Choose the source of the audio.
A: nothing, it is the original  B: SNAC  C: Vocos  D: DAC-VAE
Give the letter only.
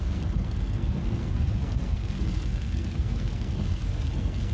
B